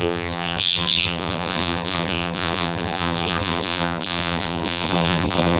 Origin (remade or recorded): remade